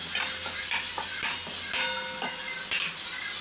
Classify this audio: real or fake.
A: real